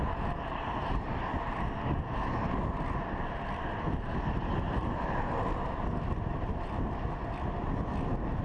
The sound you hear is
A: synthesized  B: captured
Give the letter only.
B